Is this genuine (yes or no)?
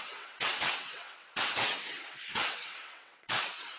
no